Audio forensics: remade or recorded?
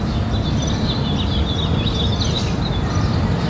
recorded